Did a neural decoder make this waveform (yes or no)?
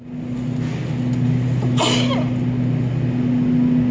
no